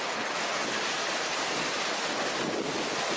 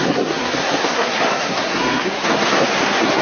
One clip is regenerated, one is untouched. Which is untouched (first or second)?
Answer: first